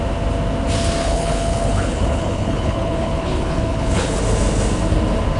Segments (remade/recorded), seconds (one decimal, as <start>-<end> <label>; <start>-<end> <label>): 0.0-1.0 recorded; 1.0-4.2 remade; 4.2-5.4 recorded